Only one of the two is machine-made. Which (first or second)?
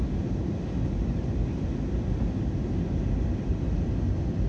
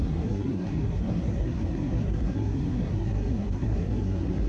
second